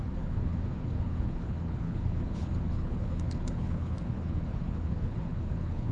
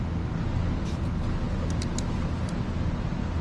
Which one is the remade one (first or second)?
first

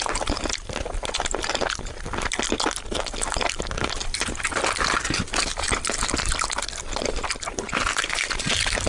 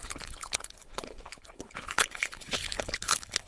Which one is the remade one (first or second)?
second